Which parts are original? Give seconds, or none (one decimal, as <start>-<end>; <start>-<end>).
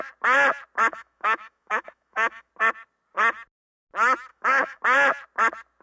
0.0-0.9; 2.5-4.3; 4.8-5.8